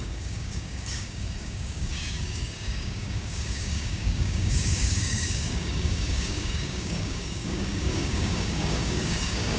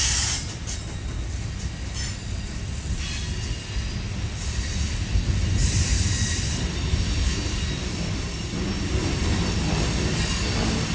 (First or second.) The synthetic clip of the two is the first